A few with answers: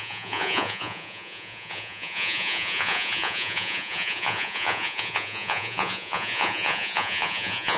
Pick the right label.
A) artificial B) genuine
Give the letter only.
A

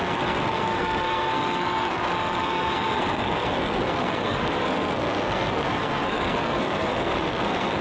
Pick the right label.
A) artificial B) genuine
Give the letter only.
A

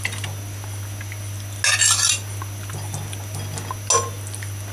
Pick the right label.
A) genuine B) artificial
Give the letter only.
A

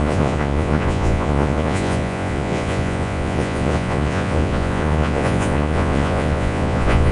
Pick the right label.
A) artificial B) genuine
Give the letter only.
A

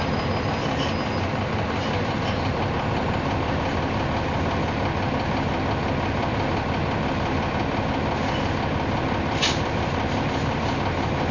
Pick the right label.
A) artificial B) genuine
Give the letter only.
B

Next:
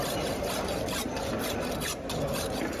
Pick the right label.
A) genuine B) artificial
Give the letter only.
A